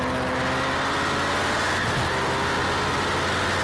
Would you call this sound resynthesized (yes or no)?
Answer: no